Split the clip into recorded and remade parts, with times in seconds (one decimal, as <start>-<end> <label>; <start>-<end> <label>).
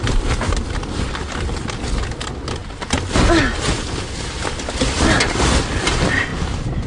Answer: 0.0-6.9 recorded